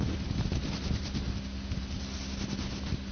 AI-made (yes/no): no